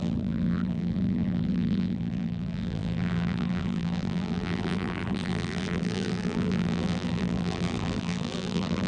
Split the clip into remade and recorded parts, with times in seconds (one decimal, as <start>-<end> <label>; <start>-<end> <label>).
0.0-8.9 remade